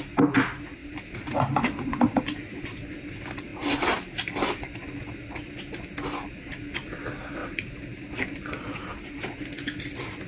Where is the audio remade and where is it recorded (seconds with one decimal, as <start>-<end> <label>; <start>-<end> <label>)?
0.0-0.8 recorded; 0.8-2.9 remade; 2.9-7.4 recorded; 7.4-9.2 remade; 9.2-10.3 recorded

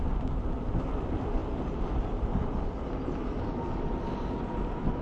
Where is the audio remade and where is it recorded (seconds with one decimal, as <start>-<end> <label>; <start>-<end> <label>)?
0.0-5.0 recorded

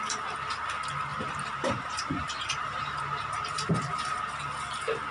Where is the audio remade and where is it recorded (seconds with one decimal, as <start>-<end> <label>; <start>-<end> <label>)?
0.0-1.1 recorded; 1.1-4.2 remade; 4.2-5.1 recorded

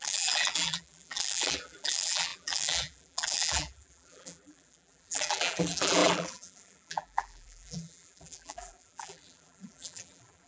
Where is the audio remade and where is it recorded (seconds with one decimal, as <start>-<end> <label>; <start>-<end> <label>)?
0.0-10.5 remade

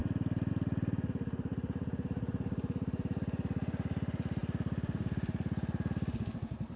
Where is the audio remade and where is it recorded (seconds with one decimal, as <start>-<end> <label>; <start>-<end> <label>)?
0.0-1.5 recorded; 1.5-3.2 remade; 3.2-6.8 recorded

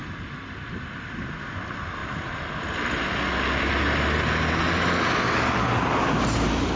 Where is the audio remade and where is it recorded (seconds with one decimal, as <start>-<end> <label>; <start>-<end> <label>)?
0.0-6.8 recorded

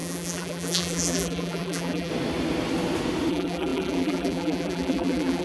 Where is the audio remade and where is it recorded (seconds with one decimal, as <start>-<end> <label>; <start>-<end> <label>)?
0.0-2.1 remade; 2.1-3.3 recorded; 3.3-5.4 remade

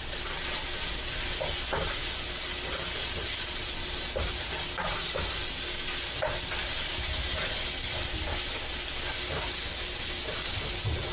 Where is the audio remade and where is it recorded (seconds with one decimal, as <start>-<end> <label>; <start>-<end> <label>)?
0.0-11.1 recorded